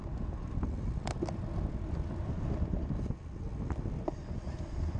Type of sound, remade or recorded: recorded